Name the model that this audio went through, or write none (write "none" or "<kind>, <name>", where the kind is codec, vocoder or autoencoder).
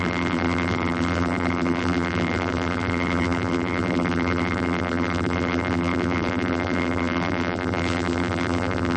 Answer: vocoder, BigVGAN v2